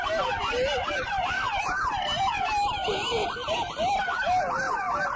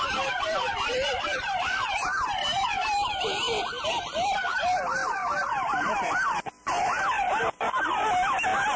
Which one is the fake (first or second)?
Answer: second